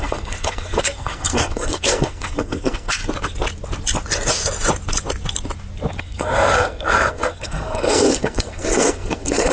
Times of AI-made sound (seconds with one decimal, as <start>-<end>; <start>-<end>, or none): 0.0-3.0; 6.0-9.5